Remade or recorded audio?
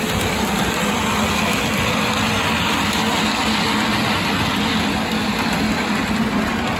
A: recorded